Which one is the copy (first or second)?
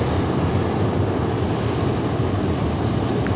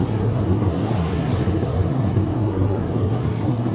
second